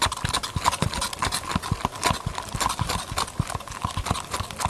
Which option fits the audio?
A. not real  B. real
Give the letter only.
B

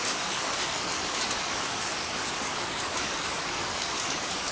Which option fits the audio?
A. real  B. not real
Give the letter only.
B